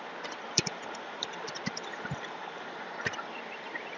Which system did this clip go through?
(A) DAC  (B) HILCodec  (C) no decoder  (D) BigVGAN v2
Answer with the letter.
D